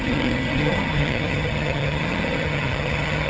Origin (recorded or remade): remade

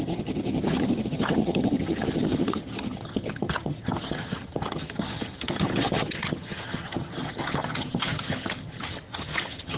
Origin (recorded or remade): remade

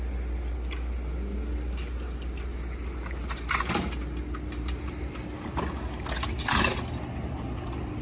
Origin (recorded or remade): recorded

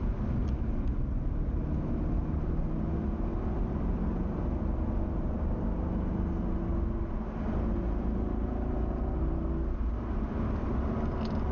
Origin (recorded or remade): recorded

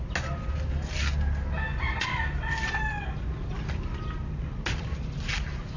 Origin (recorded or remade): recorded